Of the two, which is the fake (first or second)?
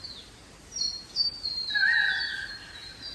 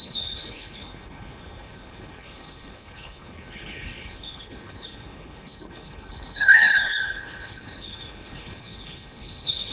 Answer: second